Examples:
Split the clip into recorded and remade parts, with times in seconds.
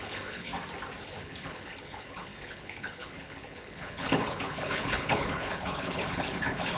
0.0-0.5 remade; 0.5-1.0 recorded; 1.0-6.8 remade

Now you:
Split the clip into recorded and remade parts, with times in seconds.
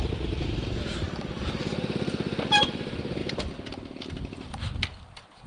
0.0-5.5 recorded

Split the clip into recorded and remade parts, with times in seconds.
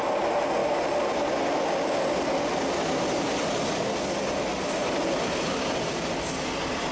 0.0-6.9 recorded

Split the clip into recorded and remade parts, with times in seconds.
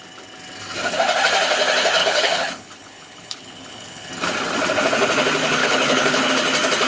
0.0-2.0 recorded; 2.0-4.1 remade; 4.1-5.6 recorded; 5.6-6.3 remade; 6.3-6.9 recorded